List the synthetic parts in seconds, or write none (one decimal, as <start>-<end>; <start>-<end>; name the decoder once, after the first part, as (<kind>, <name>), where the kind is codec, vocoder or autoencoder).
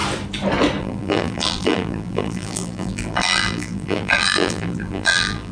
0.8-5.5 (vocoder, BigVGAN v2)